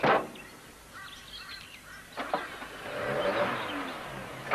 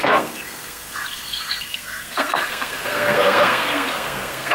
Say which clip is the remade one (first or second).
second